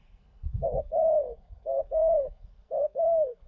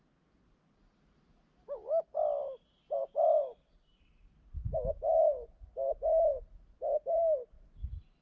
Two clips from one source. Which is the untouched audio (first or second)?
second